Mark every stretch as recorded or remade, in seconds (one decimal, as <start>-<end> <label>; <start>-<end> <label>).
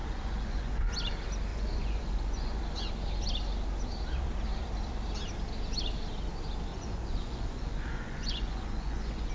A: 0.0-0.9 remade; 0.9-1.5 recorded; 1.5-2.6 remade; 2.6-6.7 recorded; 6.7-9.3 remade